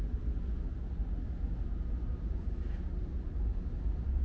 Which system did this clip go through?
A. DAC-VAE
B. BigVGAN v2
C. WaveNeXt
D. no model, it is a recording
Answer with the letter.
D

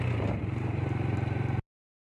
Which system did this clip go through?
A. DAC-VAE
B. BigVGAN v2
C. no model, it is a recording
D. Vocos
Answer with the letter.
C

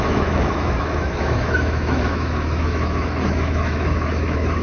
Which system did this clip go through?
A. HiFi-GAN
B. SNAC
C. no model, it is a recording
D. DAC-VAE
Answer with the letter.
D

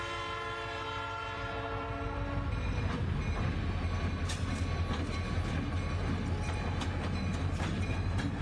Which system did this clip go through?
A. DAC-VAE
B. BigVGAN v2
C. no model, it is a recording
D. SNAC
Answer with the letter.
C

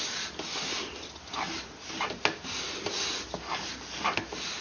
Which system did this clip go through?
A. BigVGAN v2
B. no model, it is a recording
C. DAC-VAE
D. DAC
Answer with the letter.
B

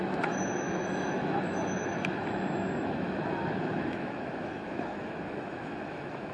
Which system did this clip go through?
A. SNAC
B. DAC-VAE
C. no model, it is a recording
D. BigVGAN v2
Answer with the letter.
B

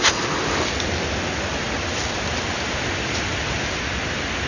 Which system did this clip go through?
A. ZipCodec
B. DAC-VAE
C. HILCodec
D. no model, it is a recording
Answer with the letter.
D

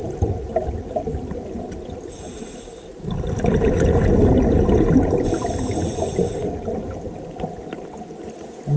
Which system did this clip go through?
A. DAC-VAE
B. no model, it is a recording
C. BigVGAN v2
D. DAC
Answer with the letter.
B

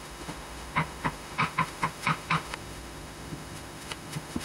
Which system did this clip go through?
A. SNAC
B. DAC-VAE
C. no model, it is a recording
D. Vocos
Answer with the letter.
B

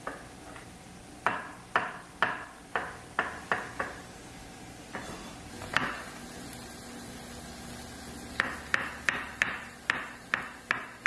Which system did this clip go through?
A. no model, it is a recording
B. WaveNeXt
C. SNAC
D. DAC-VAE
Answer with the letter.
A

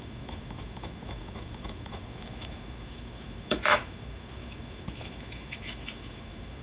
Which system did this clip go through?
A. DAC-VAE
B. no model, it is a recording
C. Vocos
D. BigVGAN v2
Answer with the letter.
A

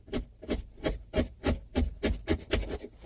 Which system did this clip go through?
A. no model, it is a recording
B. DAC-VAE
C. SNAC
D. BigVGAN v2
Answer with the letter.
A